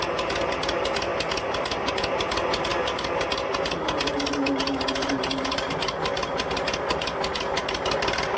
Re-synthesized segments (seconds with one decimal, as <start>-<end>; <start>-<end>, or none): none